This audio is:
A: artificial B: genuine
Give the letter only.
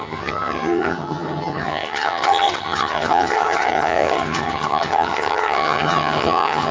A